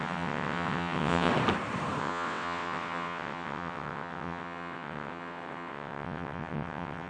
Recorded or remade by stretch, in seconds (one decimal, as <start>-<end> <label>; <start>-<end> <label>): 0.0-1.3 remade; 1.3-2.0 recorded; 2.0-7.1 remade